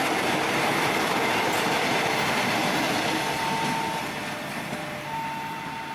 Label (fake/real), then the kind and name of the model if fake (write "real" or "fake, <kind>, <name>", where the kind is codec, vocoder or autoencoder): real